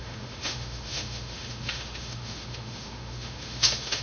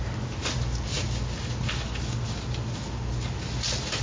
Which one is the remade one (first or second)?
first